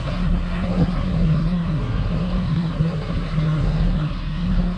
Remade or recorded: remade